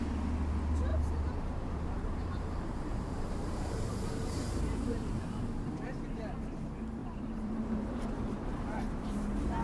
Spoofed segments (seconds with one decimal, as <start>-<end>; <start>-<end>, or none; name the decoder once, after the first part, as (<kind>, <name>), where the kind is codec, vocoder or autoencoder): 0.9-5.4 (vocoder, BigVGAN v2); 7.0-9.2